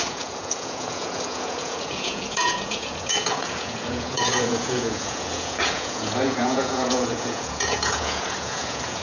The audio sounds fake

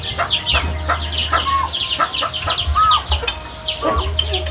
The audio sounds real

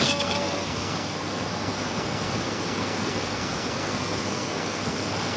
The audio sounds fake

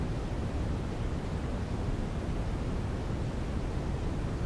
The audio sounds real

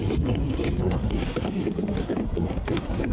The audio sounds fake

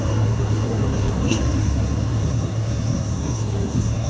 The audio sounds fake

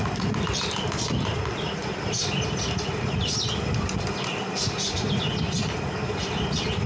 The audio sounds real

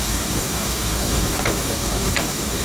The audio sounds fake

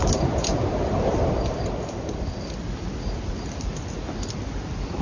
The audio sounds real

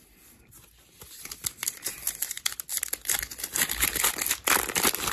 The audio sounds fake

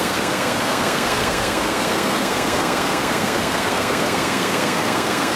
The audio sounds fake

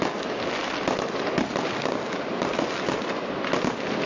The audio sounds real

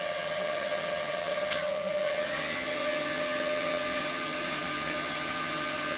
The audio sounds fake